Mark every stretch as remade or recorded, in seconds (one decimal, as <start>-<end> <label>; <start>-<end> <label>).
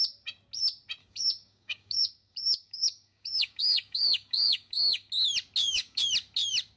0.0-1.0 recorded; 1.0-5.1 remade; 5.1-5.6 recorded; 5.6-6.1 remade; 6.1-6.8 recorded